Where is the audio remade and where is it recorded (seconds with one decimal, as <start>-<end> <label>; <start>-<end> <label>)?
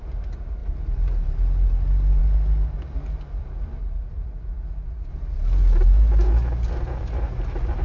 0.0-3.8 recorded; 3.8-5.1 remade; 5.1-7.8 recorded